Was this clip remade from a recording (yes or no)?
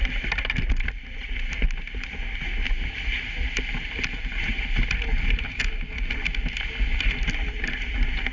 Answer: no